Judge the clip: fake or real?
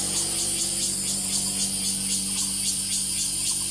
real